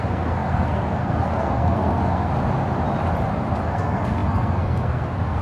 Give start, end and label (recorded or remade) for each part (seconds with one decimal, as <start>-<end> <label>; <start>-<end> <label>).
0.0-2.3 remade; 2.3-3.6 recorded; 3.6-5.4 remade